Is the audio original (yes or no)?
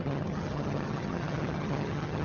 no